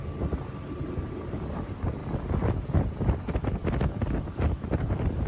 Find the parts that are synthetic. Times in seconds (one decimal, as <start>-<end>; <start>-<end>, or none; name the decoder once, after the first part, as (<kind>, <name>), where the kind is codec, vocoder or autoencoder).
2.0-5.3 (vocoder, BigVGAN v2)